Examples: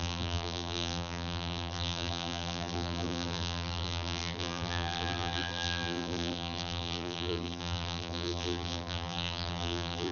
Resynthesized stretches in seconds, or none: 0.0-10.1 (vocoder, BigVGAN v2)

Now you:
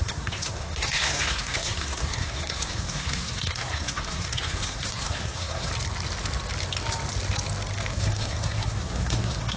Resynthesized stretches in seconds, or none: 0.0-5.7 (codec, SNAC); 7.9-9.6

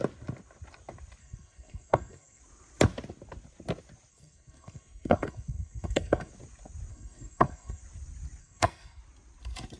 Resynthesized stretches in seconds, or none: 1.2-2.4 (codec, SNAC); 4.1-6.3; 6.9-7.8; 8.4-9.0

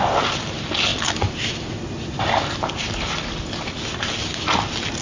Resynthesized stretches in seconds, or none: none

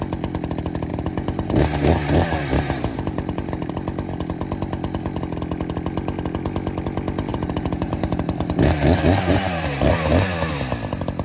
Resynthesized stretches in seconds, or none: 0.9-3.7 (vocoder, BigVGAN v2); 7.3-9.9

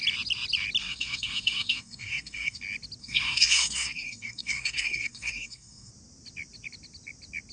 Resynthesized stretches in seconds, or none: 0.8-2.6 (codec, SNAC); 3.0-5.9

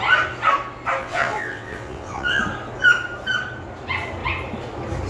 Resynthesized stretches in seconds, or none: 1.0-2.4 (vocoder, WaveNeXt)

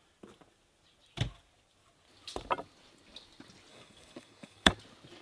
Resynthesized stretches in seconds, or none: 3.7-4.7 (codec, DAC)